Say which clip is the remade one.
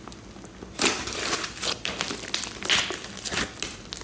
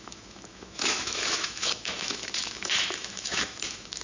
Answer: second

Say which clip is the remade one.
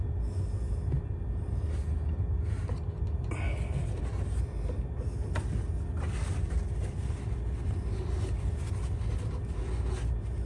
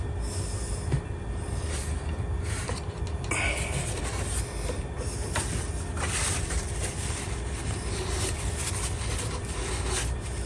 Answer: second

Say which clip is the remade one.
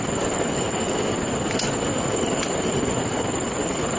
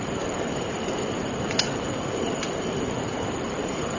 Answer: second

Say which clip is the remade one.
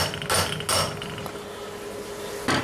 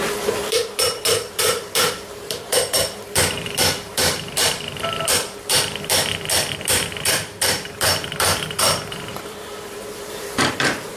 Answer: second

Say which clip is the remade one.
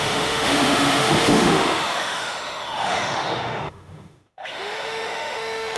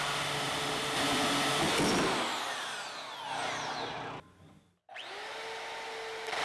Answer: first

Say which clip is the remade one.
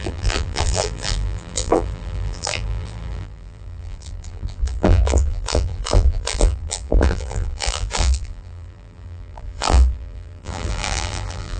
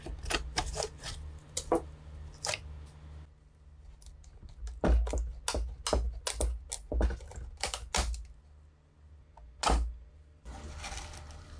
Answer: first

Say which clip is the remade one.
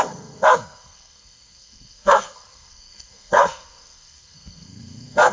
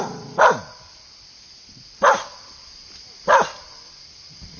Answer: first